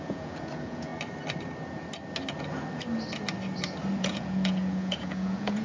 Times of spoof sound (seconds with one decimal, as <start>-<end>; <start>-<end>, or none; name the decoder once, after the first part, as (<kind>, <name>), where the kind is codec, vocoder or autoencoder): 0.0-0.9 (vocoder, Vocos); 4.0-5.6